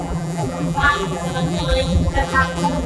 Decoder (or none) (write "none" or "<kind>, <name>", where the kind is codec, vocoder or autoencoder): vocoder, BigVGAN v2